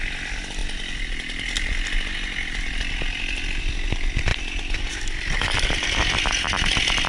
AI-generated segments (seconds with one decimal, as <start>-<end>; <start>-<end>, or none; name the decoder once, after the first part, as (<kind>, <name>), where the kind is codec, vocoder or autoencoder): none